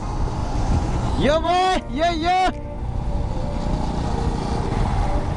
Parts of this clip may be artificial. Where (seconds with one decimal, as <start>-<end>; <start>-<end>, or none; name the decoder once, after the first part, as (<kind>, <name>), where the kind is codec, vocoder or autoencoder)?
0.4-1.8 (vocoder, Vocos)